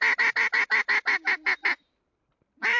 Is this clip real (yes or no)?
no